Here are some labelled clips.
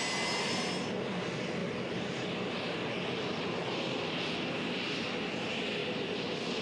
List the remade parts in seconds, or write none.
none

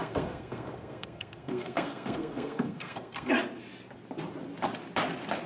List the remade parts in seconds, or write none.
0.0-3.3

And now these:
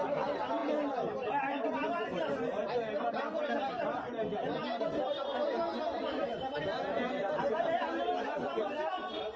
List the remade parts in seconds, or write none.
none

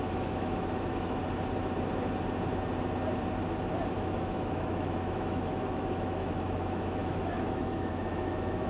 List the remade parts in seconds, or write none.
0.0-1.2; 3.9-8.7